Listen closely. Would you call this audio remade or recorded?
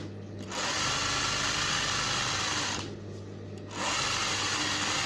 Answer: recorded